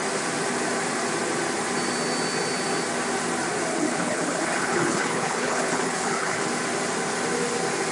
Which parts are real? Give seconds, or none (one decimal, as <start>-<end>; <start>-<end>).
0.0-3.7; 6.4-7.9

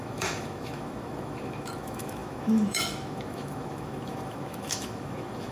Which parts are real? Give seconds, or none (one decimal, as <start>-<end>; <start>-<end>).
none

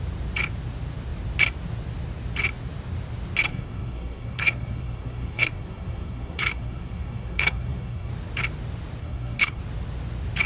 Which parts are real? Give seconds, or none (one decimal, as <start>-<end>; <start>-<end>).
0.0-3.5; 8.1-9.0; 9.6-10.5